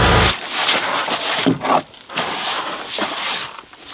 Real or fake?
real